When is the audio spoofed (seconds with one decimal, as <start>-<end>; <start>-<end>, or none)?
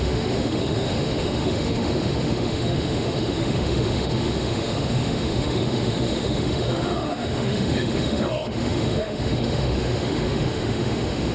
0.0-11.3